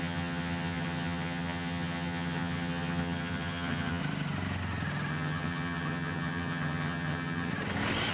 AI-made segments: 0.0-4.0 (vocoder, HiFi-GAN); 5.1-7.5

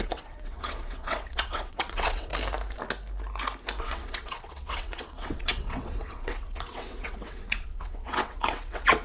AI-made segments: 0.0-2.3 (vocoder, WaveNeXt); 3.8-9.0

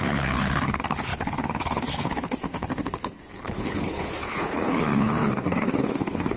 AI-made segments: 0.0-6.4 (codec, HILCodec)

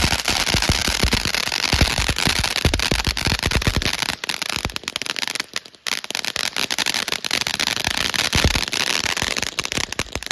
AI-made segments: 0.0-3.7 (vocoder, BigVGAN v2); 6.8-7.5; 8.3-10.3